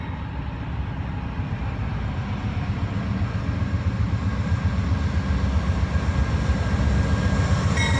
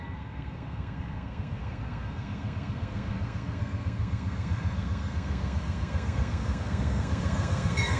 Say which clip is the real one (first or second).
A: first